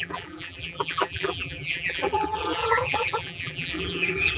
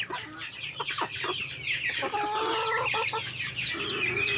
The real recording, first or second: second